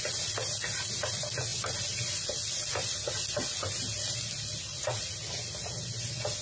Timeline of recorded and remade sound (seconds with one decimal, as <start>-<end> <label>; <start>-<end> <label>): 0.0-6.4 recorded